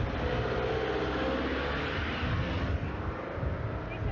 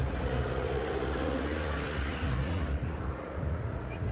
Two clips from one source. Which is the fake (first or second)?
second